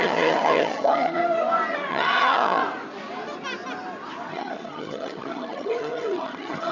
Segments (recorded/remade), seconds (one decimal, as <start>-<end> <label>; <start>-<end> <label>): 0.0-1.2 remade; 1.2-1.9 recorded; 1.9-2.6 remade; 2.6-4.3 recorded; 4.3-6.7 remade